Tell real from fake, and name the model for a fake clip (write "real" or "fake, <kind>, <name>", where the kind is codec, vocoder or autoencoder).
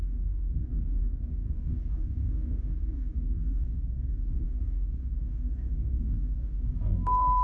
fake, codec, DAC